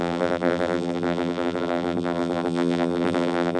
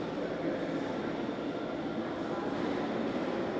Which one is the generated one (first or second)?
first